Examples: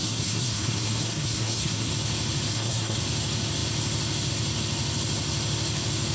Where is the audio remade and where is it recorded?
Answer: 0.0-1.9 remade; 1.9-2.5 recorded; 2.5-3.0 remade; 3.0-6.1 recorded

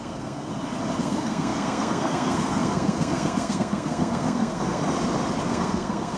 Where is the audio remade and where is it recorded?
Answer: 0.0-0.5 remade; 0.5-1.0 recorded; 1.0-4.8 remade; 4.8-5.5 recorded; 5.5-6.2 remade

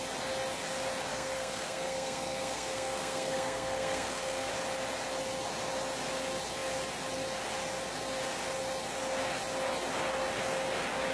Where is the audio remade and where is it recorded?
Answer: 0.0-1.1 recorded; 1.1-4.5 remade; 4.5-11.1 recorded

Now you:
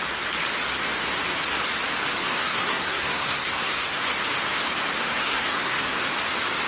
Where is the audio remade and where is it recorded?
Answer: 0.0-2.3 recorded; 2.3-4.0 remade; 4.0-5.0 recorded; 5.0-6.0 remade; 6.0-6.7 recorded

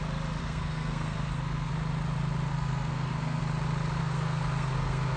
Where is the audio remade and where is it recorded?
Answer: 0.0-0.4 recorded; 0.4-1.7 remade; 1.7-2.5 recorded; 2.5-3.4 remade; 3.4-4.0 recorded; 4.0-5.2 remade

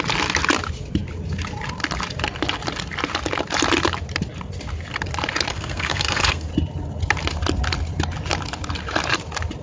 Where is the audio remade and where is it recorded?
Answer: 0.0-5.5 recorded; 5.5-6.5 remade; 6.5-9.6 recorded